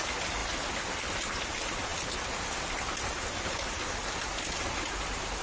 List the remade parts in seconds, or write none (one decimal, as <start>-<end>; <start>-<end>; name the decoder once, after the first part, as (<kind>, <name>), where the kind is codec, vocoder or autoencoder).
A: none